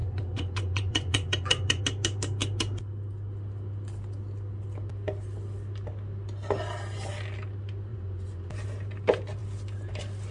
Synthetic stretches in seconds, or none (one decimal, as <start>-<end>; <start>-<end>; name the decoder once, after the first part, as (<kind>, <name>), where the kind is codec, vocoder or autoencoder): 0.0-1.8 (vocoder, Vocos); 7.9-8.5